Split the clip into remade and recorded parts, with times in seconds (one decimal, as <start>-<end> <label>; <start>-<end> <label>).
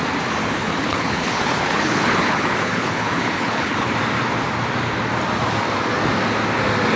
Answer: 0.0-0.4 recorded; 0.4-3.9 remade; 3.9-7.0 recorded